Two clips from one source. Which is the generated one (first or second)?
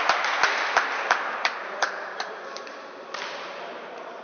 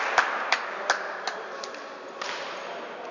first